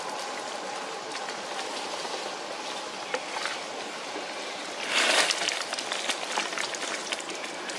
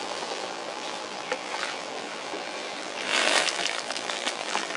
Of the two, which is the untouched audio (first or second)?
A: first